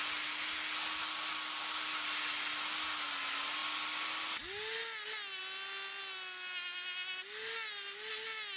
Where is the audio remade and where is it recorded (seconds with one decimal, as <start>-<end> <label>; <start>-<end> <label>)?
0.0-8.6 recorded